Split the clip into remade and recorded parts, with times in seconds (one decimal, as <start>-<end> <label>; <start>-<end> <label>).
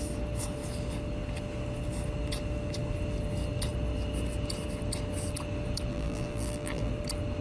0.0-5.9 recorded; 5.9-6.9 remade; 6.9-7.4 recorded